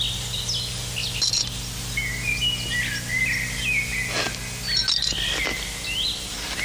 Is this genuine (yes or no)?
yes